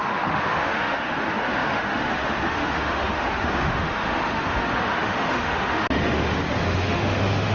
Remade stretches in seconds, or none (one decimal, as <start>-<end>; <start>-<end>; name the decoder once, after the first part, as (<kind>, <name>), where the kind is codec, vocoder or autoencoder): 0.0-7.5 (autoencoder, DAC-VAE)